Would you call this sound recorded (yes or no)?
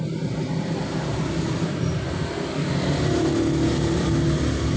yes